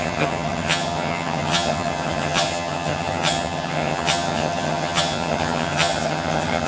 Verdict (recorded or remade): remade